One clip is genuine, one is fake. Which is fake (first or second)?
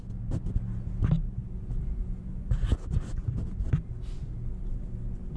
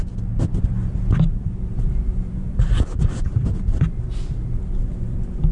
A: second